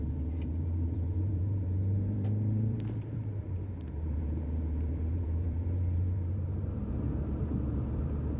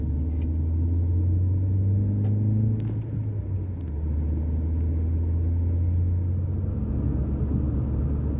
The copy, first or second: first